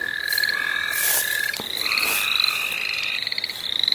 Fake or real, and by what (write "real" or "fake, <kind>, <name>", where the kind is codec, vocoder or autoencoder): real